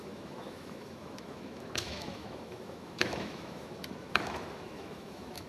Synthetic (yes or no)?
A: yes